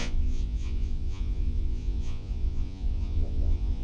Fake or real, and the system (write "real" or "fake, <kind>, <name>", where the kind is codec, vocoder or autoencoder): fake, vocoder, Vocos